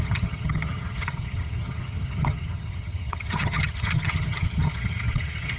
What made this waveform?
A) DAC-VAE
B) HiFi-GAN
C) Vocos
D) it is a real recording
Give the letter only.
B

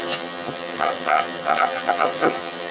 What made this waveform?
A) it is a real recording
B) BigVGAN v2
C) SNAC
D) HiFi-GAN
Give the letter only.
D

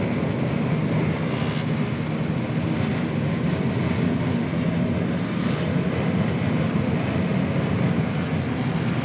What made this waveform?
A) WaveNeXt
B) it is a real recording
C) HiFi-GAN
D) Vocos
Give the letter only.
B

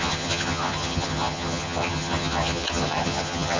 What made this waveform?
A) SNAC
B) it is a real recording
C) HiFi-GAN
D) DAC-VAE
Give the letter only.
C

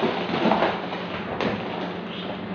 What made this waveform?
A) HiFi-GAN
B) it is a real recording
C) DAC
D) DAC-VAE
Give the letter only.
B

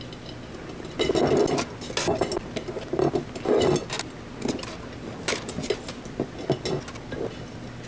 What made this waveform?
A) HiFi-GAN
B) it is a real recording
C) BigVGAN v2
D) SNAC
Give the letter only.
B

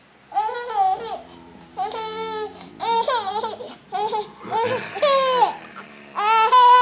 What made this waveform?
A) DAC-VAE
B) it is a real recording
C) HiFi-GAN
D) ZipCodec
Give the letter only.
B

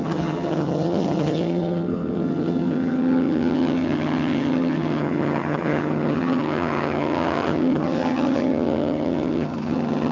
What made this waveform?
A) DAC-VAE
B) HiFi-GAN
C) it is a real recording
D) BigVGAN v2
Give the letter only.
B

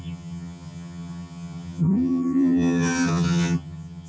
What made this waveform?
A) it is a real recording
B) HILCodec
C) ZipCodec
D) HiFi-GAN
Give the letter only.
D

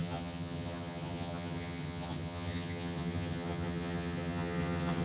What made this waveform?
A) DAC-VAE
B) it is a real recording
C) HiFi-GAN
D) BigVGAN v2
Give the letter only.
C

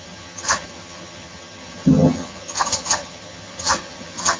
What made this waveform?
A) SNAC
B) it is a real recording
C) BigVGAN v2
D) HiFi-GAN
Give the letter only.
D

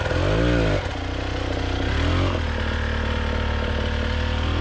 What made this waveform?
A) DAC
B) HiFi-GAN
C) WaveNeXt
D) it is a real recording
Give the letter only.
D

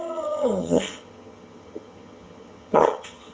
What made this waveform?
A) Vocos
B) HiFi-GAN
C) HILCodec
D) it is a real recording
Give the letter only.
B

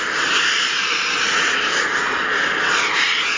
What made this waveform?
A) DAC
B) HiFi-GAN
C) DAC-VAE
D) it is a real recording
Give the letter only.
D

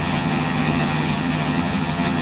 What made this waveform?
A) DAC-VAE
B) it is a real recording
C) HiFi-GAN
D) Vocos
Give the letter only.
C